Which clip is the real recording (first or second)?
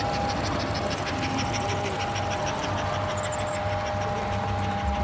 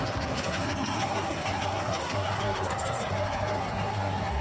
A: first